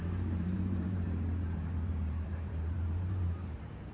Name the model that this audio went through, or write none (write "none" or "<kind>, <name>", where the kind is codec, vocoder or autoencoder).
vocoder, BigVGAN v2